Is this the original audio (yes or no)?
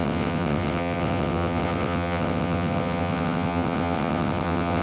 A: no